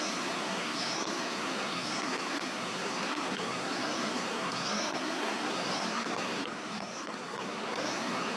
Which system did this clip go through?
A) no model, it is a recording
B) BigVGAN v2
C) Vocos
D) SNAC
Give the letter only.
D